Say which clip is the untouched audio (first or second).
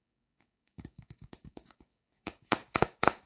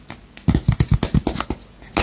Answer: second